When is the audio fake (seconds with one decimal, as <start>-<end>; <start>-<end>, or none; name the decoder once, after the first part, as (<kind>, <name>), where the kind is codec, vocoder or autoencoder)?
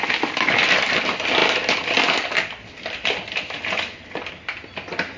1.4-4.3 (vocoder, BigVGAN v2)